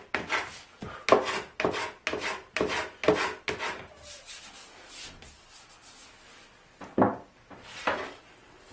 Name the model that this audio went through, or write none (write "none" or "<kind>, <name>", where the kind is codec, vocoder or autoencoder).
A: none